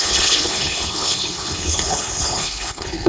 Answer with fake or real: fake